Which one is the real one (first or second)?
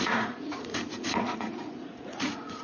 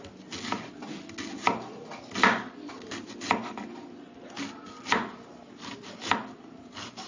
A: second